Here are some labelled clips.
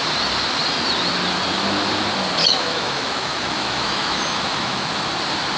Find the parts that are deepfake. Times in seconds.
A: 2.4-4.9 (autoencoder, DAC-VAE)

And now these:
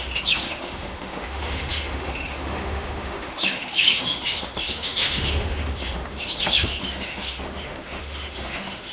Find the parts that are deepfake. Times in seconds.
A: 0.0-8.9 (autoencoder, DAC-VAE)

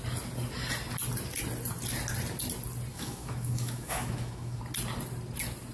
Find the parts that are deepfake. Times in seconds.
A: 2.9-4.6 (autoencoder, DAC-VAE)

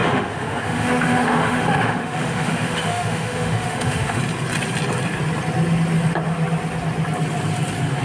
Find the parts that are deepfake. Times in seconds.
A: 0.0-4.2 (autoencoder, DAC-VAE)

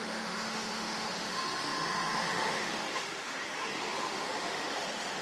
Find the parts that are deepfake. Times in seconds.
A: 0.0-5.2 (autoencoder, DAC-VAE)